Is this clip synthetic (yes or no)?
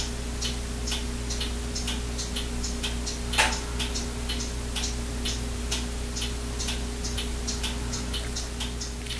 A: no